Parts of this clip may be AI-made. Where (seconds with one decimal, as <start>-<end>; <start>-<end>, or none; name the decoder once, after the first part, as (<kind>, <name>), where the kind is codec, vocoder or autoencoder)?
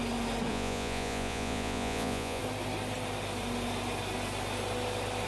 0.5-2.4 (vocoder, Vocos)